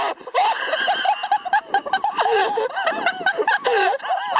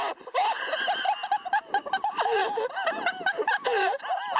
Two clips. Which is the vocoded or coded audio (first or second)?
first